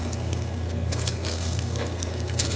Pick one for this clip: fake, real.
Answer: fake